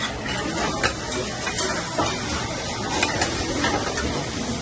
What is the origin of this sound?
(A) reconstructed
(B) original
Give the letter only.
B